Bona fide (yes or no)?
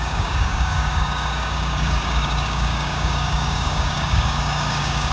no